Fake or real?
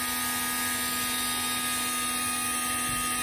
real